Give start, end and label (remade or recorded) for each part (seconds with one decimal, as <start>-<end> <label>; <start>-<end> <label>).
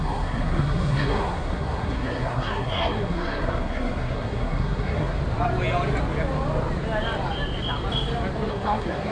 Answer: 0.0-5.2 remade; 5.2-8.5 recorded; 8.5-9.1 remade